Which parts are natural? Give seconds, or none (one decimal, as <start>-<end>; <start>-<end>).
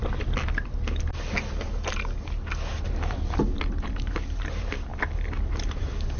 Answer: 0.0-3.7; 4.9-5.5